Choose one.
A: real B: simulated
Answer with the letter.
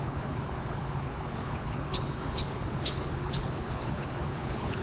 B